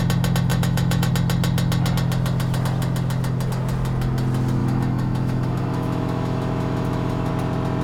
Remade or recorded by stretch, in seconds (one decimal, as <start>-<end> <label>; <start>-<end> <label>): 0.0-0.5 recorded; 0.5-1.1 remade; 1.1-4.6 recorded; 4.6-7.3 remade; 7.3-7.8 recorded